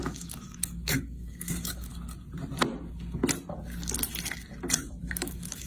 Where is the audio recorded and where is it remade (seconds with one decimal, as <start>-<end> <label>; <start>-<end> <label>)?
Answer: 0.0-1.9 remade; 1.9-5.0 recorded; 5.0-5.7 remade